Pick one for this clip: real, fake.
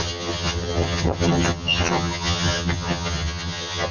fake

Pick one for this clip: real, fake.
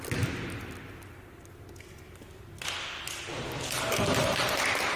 real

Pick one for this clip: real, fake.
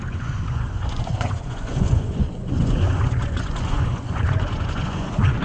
fake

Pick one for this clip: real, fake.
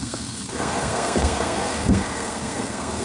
fake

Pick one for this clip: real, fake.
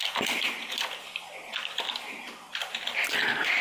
real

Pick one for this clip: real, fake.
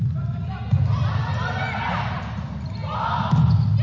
real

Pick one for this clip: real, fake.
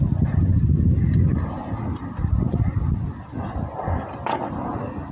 real